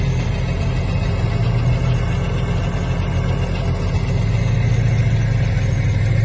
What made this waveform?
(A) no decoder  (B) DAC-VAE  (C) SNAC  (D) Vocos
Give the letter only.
A